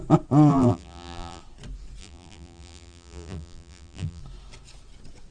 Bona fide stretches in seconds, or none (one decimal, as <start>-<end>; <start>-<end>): 0.0-0.5; 1.4-2.0; 4.2-5.3